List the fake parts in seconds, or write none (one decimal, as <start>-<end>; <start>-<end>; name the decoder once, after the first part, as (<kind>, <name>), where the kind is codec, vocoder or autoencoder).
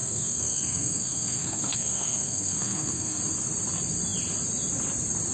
0.0-3.2 (codec, SNAC)